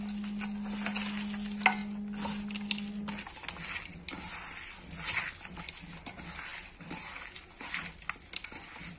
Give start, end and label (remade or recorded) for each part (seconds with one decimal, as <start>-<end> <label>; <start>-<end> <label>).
0.0-9.0 recorded